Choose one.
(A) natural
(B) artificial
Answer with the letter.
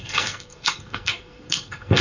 B